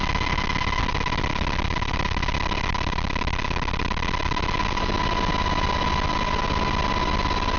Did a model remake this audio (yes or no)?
no